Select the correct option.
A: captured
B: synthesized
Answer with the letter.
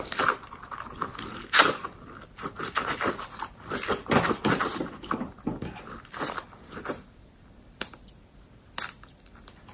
B